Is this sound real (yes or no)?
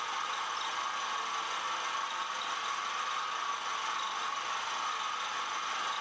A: yes